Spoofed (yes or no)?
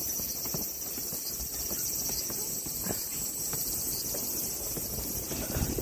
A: no